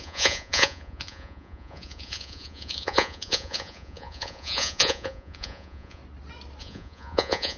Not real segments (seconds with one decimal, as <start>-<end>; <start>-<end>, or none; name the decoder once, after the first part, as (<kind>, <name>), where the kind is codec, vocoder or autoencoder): 0.0-6.0 (vocoder, Vocos); 6.6-7.6